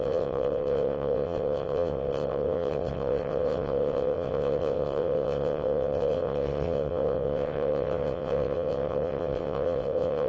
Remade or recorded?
remade